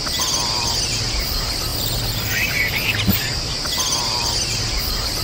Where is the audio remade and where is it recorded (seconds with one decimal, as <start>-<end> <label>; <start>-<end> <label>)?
0.0-5.2 recorded